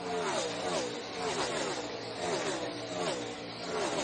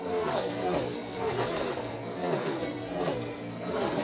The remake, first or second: second